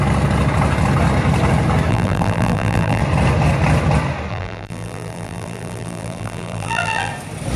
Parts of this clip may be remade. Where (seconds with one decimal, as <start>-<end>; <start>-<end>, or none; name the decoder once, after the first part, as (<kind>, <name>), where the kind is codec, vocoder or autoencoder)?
1.9-3.0 (vocoder, BigVGAN v2); 4.3-7.1